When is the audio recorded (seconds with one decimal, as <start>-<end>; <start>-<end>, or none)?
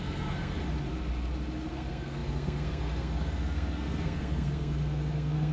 0.6-1.7